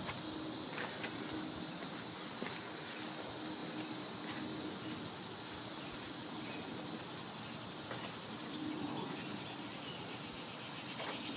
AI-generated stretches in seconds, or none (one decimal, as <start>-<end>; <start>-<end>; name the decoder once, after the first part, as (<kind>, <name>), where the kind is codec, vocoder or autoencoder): 9.3-10.2 (vocoder, Vocos)